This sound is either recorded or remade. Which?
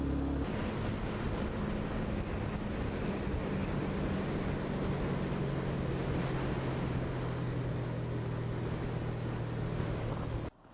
recorded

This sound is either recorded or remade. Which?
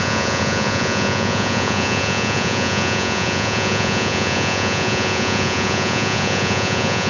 remade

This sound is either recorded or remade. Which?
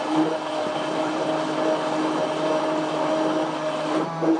remade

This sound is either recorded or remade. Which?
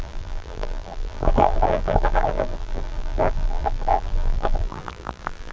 remade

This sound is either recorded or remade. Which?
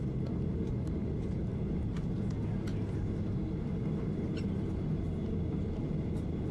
recorded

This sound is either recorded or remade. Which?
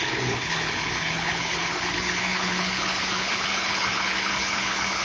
remade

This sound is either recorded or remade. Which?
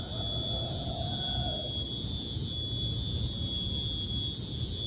recorded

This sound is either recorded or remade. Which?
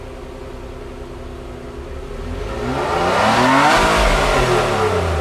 recorded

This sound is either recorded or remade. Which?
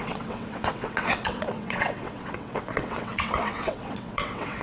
remade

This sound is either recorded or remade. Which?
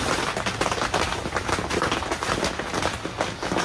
recorded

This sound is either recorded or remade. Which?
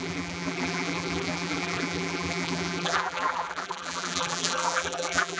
remade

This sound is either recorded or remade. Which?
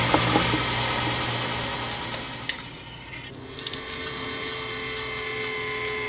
recorded